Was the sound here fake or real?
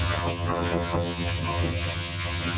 fake